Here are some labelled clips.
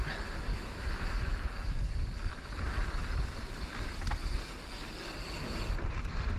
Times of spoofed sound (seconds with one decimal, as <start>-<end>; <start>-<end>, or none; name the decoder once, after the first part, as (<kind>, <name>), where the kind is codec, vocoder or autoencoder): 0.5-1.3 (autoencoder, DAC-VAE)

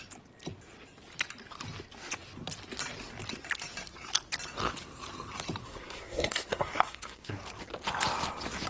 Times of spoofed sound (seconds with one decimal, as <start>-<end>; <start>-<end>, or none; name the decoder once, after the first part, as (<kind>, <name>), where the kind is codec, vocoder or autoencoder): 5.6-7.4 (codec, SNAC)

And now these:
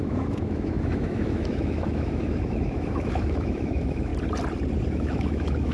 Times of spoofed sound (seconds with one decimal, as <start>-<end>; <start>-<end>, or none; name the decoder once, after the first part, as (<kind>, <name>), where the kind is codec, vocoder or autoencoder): 0.0-4.1 (autoencoder, DAC-VAE); 4.9-5.7